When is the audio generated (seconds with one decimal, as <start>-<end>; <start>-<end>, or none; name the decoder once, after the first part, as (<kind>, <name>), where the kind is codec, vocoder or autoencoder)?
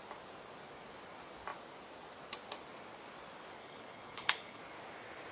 3.6-4.6 (codec, HILCodec)